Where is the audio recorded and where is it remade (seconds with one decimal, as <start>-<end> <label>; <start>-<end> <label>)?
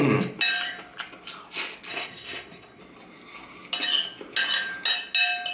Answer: 0.0-1.9 recorded; 1.9-2.8 remade; 2.8-5.5 recorded